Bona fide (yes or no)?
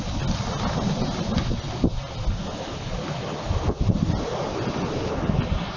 yes